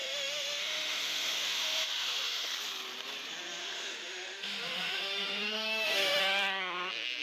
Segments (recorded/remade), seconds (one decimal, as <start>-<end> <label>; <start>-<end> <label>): 0.0-2.5 remade; 2.5-3.6 recorded; 3.6-6.2 remade; 6.2-7.2 recorded